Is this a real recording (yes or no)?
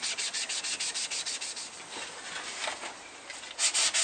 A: yes